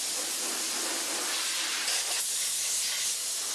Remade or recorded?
recorded